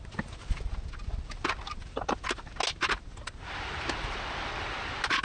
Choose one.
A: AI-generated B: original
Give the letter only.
B